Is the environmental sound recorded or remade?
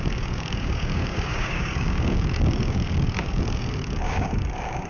remade